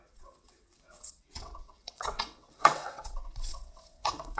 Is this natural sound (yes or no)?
no